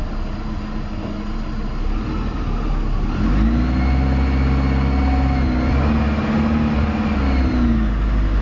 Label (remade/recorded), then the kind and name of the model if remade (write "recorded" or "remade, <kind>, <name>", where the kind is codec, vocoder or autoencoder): recorded